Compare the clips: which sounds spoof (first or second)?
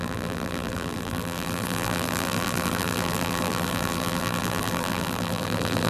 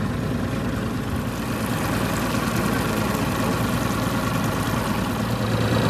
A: first